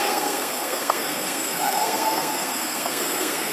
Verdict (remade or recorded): remade